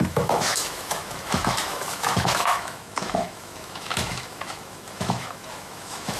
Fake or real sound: fake